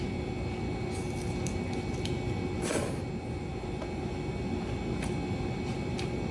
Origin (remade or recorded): recorded